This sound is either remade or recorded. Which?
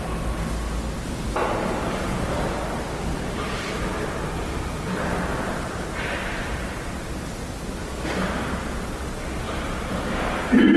recorded